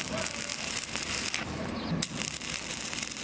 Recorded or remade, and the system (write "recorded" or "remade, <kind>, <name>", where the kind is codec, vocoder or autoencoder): recorded